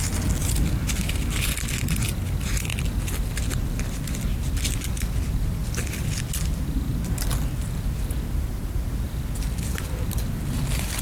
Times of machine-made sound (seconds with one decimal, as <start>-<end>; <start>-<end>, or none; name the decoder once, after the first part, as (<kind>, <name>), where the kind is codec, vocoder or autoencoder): 5.6-6.1 (vocoder, BigVGAN v2)